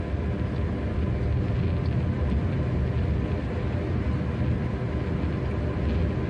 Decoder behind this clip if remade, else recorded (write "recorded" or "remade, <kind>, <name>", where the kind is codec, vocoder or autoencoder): recorded